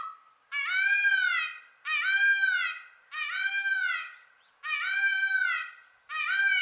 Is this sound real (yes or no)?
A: yes